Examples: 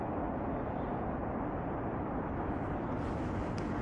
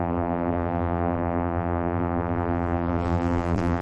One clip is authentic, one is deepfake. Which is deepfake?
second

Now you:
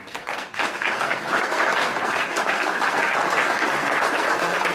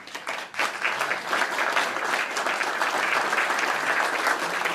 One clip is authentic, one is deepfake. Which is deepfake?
first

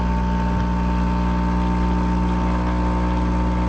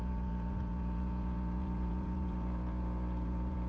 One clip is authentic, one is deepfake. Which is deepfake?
second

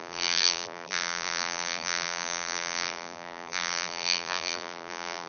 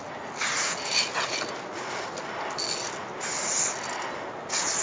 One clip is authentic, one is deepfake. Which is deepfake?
first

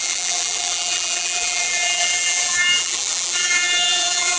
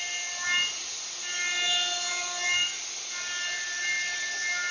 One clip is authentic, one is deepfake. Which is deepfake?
first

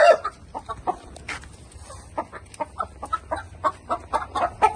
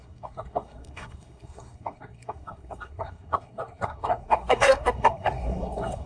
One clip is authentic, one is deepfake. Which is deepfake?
second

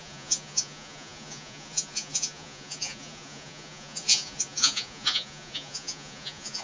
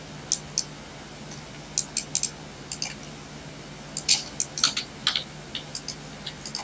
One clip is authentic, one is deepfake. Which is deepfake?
first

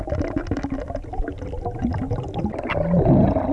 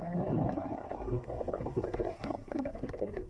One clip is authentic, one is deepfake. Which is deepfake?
second